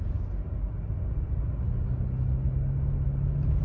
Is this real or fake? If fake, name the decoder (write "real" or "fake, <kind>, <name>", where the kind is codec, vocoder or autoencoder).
real